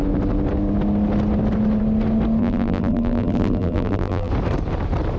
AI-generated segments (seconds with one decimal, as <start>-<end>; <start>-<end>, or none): 2.4-4.3